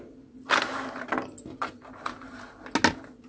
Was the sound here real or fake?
real